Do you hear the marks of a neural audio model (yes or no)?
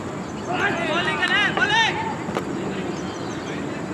no